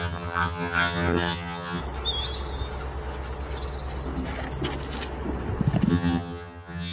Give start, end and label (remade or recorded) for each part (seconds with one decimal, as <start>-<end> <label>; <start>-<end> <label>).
0.0-1.8 remade; 1.8-5.9 recorded; 5.9-6.9 remade